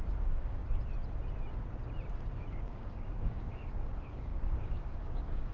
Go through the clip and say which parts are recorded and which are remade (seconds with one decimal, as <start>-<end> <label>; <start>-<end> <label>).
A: 0.0-0.6 remade; 0.6-2.3 recorded; 2.3-5.5 remade